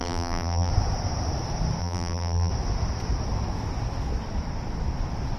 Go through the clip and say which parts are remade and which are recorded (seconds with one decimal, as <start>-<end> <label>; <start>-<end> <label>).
0.0-0.7 remade; 0.7-1.8 recorded; 1.8-2.5 remade; 2.5-5.4 recorded

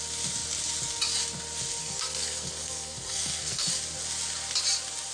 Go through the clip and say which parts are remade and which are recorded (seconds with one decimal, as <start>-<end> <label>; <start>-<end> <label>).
0.0-1.8 recorded; 1.8-3.7 remade; 3.7-5.1 recorded

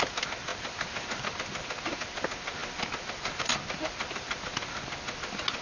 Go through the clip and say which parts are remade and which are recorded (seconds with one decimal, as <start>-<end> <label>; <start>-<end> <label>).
0.0-5.6 recorded

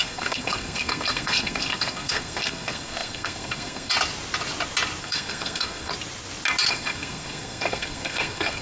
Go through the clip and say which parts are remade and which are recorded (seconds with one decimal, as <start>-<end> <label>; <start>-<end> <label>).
0.0-3.9 remade; 3.9-5.0 recorded; 5.0-5.9 remade; 5.9-6.7 recorded; 6.7-8.6 remade

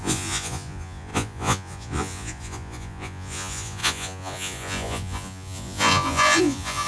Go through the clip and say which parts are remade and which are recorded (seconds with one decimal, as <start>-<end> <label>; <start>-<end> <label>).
0.0-6.9 remade

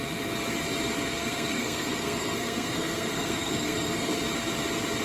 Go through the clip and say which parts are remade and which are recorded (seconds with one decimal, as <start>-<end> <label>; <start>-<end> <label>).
0.0-1.2 recorded; 1.2-4.2 remade; 4.2-5.0 recorded

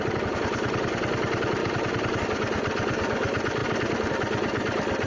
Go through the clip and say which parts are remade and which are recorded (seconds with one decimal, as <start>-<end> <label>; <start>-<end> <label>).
0.0-1.6 recorded; 1.6-2.2 remade; 2.2-5.1 recorded